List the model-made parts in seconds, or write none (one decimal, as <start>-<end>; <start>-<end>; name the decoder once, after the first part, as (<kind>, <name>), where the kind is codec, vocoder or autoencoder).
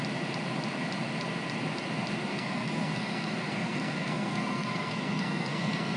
2.3-6.0 (codec, SNAC)